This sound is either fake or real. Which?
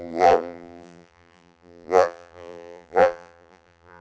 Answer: fake